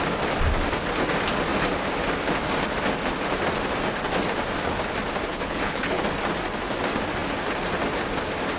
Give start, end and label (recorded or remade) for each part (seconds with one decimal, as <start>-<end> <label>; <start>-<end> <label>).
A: 0.0-5.3 recorded; 5.3-6.0 remade; 6.0-8.6 recorded